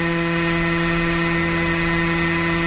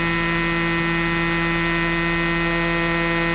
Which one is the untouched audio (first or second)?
second